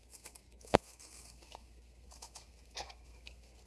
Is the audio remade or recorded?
remade